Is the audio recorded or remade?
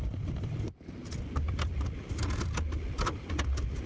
recorded